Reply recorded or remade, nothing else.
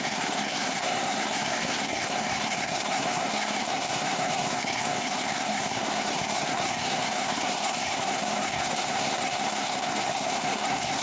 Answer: remade